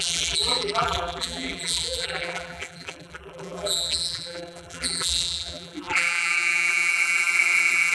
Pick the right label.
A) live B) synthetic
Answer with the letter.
B